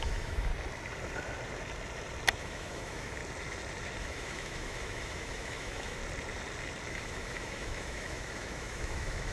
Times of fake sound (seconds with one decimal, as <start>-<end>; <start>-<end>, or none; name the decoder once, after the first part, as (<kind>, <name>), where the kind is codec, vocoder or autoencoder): 0.0-0.5 (autoencoder, DAC-VAE); 2.4-3.2; 4.0-6.0; 6.9-9.3